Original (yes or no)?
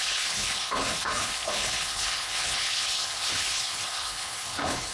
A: no